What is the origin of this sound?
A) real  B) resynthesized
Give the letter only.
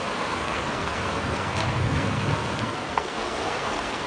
B